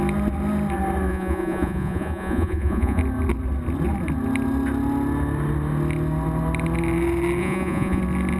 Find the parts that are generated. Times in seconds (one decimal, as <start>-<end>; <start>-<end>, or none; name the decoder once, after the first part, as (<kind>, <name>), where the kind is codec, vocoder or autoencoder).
1.1-3.0 (vocoder, Vocos); 7.4-8.0